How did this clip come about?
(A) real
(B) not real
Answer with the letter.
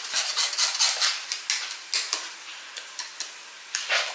A